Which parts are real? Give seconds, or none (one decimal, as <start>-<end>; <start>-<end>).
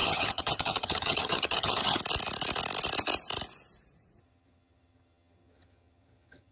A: 2.0-4.2